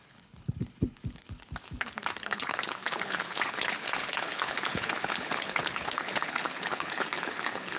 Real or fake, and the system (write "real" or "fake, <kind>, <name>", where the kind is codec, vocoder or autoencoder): fake, codec, HILCodec